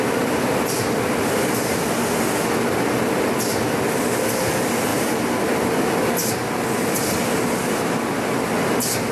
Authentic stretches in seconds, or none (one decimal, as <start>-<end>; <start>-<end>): 0.0-9.1